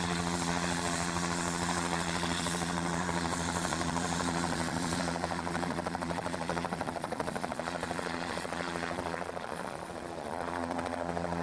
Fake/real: fake